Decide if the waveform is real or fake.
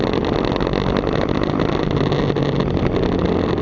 real